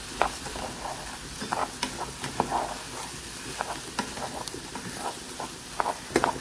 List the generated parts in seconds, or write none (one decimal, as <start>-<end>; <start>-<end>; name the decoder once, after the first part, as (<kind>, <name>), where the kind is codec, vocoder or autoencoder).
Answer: none